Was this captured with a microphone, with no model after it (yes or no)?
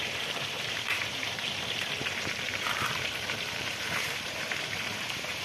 no